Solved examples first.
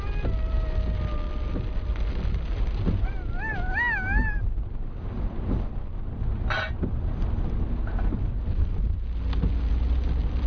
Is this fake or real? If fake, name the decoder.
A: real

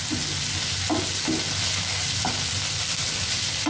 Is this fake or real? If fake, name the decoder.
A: real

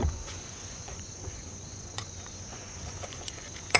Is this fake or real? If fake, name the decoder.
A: fake, vocoder, Vocos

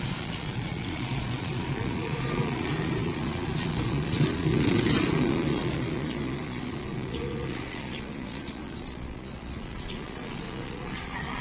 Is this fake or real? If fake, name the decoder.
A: fake, vocoder, Vocos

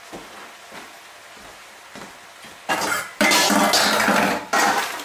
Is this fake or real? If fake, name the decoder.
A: real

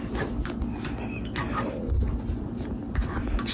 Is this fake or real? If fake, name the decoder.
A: real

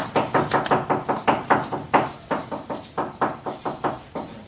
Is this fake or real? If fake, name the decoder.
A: real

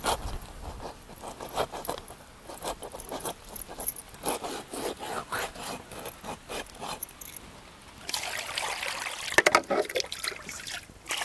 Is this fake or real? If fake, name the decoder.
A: real